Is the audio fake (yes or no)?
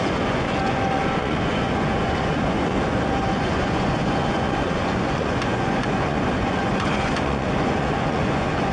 yes